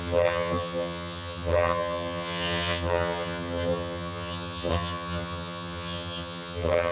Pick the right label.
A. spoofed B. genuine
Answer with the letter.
A